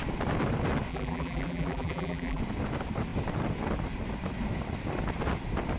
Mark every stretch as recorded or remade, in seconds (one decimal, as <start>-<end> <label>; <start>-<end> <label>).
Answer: 0.0-0.9 recorded; 0.9-2.4 remade; 2.4-5.8 recorded

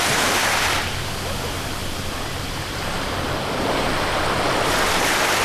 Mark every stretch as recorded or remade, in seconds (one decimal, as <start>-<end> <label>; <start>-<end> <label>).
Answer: 0.0-5.4 recorded

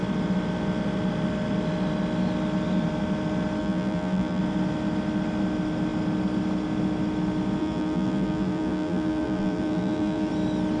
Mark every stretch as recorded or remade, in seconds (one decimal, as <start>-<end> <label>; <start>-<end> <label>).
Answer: 0.0-3.6 recorded; 3.6-4.4 remade; 4.4-7.6 recorded; 7.6-10.3 remade; 10.3-10.8 recorded

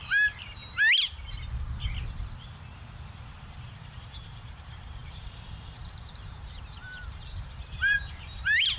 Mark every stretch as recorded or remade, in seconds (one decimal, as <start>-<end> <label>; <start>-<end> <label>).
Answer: 0.0-0.6 remade; 0.6-3.6 recorded; 3.6-8.8 remade

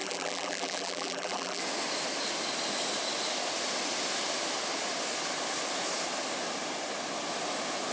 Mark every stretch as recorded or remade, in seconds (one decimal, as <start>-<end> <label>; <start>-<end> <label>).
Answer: 0.0-1.6 remade; 1.6-7.9 recorded

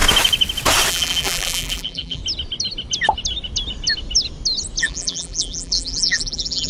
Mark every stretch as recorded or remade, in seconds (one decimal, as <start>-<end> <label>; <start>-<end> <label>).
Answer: 0.0-0.9 recorded; 0.9-2.2 remade; 2.2-4.8 recorded; 4.8-6.7 remade

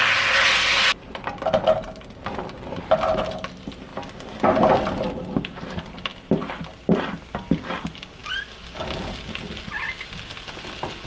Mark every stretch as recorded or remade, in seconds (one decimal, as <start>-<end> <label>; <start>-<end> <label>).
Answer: 0.0-11.1 recorded